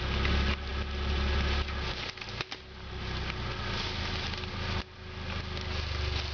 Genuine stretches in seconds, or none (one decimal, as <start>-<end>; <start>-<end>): 0.0-6.3